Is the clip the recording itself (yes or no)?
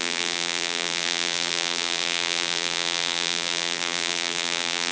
no